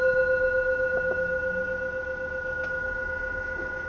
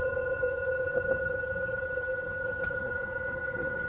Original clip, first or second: first